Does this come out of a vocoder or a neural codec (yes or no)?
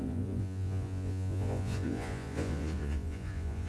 yes